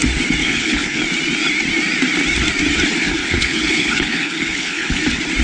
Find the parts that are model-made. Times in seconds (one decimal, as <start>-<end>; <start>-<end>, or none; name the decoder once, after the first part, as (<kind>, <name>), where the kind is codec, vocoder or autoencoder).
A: 0.4-1.0 (codec, HILCodec); 3.2-5.0